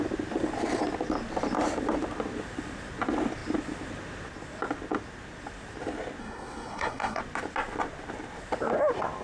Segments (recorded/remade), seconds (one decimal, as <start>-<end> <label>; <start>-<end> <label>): 0.0-6.2 recorded; 6.2-7.2 remade; 7.2-9.2 recorded